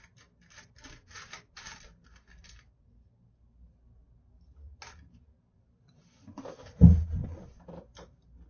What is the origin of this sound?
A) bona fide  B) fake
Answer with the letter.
A